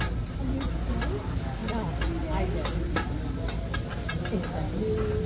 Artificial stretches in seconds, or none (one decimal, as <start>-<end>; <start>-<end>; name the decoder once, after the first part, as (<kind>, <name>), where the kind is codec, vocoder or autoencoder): none